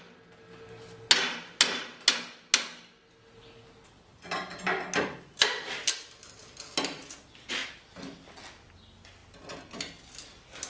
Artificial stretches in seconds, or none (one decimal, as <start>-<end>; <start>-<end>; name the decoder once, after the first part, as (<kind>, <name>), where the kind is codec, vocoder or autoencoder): none